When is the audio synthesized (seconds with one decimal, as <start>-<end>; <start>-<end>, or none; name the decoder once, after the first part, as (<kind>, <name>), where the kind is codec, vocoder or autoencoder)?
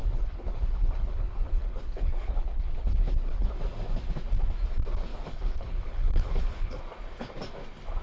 0.0-3.5 (codec, HILCodec); 5.1-6.8